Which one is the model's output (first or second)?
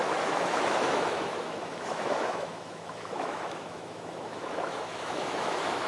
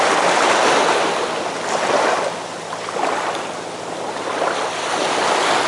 first